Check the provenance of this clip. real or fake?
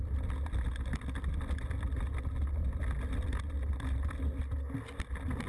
real